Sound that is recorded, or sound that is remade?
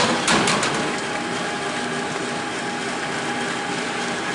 recorded